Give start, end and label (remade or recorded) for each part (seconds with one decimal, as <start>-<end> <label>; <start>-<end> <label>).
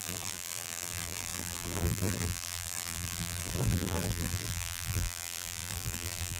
0.0-6.4 remade